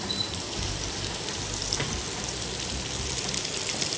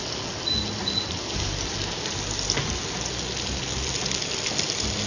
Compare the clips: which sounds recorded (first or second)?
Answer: second